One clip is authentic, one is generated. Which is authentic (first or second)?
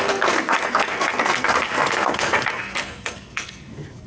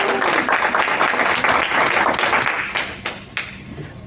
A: second